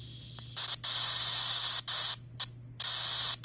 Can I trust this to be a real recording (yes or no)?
yes